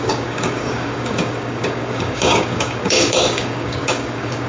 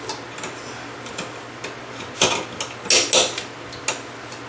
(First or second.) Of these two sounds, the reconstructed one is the first